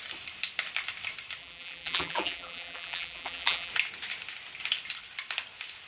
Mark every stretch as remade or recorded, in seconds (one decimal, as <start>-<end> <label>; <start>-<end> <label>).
0.0-1.4 recorded; 1.4-3.7 remade; 3.7-5.9 recorded